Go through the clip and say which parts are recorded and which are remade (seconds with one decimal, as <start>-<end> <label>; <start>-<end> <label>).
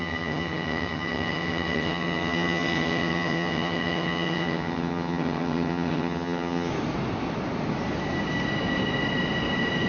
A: 0.0-6.7 remade; 6.7-9.9 recorded